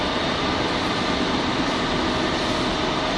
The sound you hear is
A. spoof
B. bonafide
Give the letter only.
B